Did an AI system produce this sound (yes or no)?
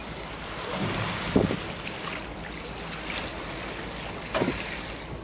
no